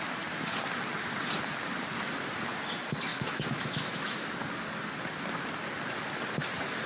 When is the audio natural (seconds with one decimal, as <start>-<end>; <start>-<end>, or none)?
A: 0.0-3.1; 4.3-6.9